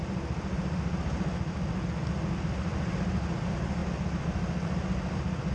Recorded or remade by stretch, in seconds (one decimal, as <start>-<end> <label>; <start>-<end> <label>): 0.0-5.5 recorded